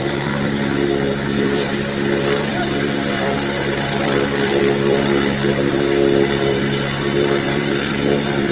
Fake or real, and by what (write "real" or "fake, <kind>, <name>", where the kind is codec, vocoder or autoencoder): fake, vocoder, BigVGAN v2